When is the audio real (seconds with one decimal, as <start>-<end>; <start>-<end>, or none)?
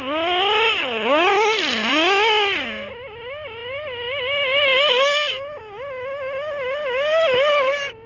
0.0-0.8; 1.3-8.1